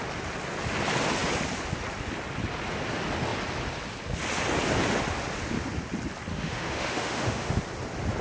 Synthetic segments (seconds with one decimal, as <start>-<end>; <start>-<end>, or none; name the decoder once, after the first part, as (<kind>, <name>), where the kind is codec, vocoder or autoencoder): 6.3-7.6 (autoencoder, DAC-VAE)